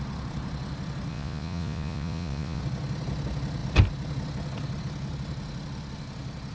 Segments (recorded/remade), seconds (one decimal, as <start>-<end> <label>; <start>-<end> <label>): 0.0-1.1 recorded; 1.1-2.6 remade; 2.6-6.5 recorded